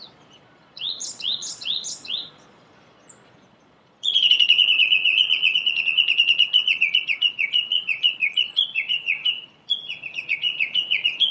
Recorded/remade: remade